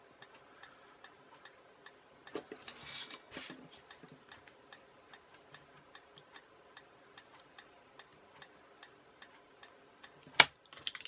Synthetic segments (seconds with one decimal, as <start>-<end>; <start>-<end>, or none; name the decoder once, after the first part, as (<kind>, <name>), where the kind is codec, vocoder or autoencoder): 2.8-3.3 (autoencoder, DAC-VAE)